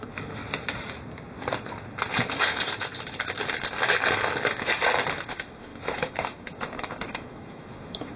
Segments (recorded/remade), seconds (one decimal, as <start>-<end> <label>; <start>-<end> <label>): 0.0-0.4 remade; 0.4-5.3 recorded; 5.3-8.2 remade